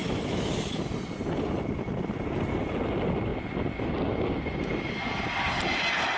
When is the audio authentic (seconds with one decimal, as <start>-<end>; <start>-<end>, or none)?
0.8-6.2